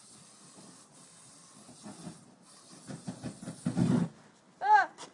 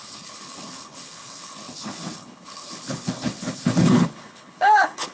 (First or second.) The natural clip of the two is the first